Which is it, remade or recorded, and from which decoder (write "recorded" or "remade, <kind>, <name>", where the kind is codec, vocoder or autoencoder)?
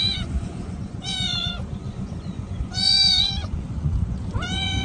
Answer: remade, vocoder, Vocos